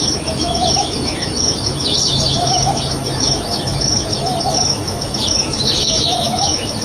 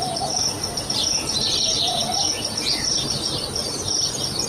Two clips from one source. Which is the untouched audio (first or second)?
second